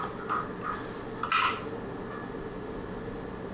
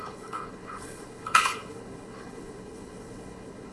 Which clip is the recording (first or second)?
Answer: first